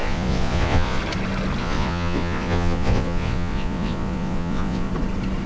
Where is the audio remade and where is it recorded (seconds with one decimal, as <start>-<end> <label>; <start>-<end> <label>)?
0.0-1.0 remade; 1.0-1.6 recorded; 1.6-4.9 remade; 4.9-5.5 recorded